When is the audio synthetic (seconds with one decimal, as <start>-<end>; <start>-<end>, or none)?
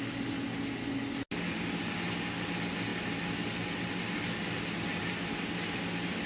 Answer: none